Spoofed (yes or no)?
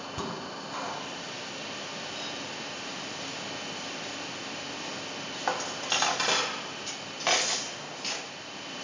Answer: no